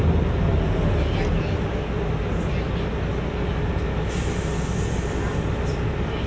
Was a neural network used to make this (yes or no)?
no